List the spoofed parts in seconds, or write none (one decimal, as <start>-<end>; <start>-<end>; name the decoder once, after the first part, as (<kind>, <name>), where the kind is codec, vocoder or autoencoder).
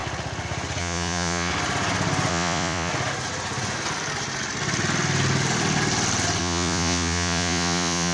0.8-1.5 (vocoder, Vocos); 2.3-2.9; 6.4-8.1